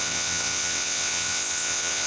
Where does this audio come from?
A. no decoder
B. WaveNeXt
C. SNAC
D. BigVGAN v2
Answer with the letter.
B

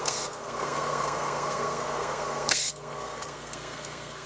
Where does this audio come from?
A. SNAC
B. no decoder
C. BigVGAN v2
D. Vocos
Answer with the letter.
A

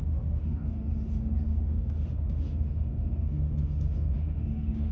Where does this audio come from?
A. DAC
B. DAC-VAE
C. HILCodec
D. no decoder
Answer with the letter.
B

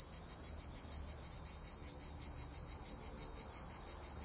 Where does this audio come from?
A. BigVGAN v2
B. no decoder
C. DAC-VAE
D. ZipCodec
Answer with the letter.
B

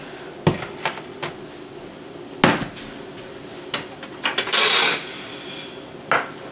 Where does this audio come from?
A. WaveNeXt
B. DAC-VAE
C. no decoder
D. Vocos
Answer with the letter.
C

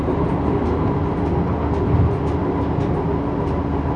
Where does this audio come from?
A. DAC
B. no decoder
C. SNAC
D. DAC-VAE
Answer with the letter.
B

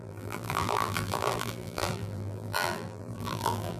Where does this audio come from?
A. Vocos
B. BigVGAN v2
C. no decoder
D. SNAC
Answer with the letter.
B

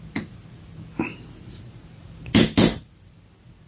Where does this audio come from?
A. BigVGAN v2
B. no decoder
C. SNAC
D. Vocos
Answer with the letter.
B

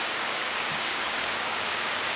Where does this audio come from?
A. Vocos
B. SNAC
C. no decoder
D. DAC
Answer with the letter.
D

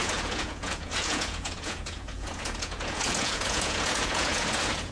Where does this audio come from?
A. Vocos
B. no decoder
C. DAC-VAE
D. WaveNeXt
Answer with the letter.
A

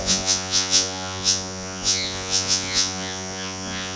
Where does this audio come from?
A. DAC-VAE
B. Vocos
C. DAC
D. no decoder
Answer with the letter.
B